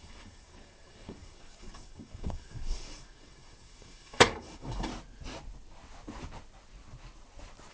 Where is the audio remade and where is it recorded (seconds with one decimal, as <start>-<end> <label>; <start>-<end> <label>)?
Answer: 0.0-4.9 remade; 4.9-7.7 recorded